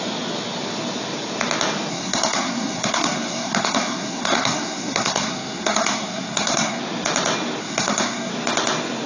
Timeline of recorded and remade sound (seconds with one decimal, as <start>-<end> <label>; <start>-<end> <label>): 0.0-1.9 recorded; 1.9-6.8 remade; 6.8-7.6 recorded; 7.6-8.3 remade; 8.3-9.1 recorded